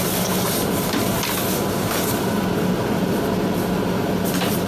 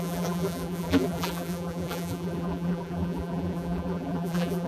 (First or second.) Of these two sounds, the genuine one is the first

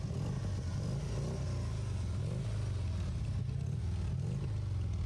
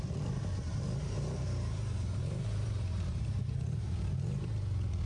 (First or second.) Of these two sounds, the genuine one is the first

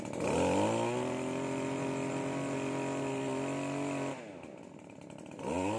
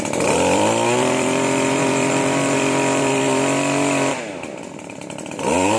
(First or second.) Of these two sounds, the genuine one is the first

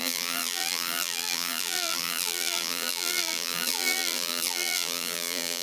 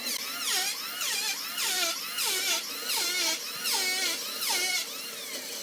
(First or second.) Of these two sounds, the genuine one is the second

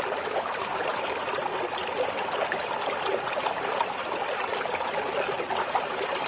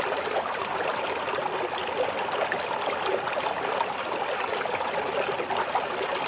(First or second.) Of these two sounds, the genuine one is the second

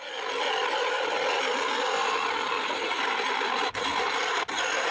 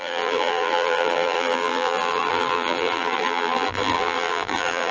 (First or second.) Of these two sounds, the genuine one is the first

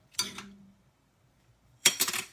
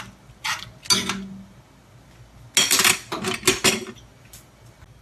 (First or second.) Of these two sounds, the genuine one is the second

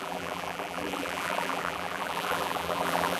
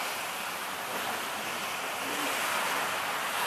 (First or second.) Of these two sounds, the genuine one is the second